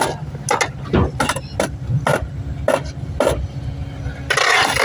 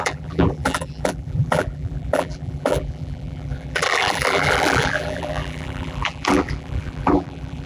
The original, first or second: first